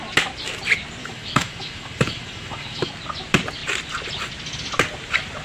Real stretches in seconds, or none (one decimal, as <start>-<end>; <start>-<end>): 0.0-1.0; 2.9-5.4